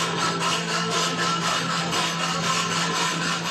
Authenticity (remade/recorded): remade